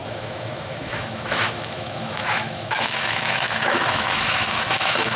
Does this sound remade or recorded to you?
remade